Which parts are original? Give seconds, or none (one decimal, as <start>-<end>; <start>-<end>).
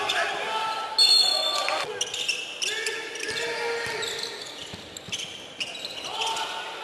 0.0-6.8